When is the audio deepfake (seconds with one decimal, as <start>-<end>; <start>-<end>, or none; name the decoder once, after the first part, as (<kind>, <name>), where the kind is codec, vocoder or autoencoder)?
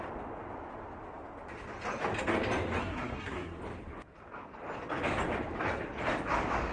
2.8-3.6 (codec, SNAC)